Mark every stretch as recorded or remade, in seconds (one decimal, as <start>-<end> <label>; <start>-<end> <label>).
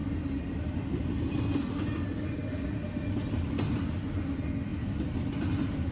0.0-5.9 recorded